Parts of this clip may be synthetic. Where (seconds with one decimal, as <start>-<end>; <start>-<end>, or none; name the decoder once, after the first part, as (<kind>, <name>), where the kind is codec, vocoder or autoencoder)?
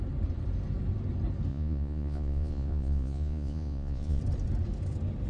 1.5-4.2 (vocoder, Vocos)